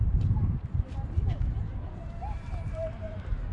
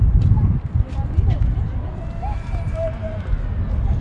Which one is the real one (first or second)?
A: second